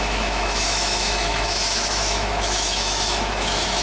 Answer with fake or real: fake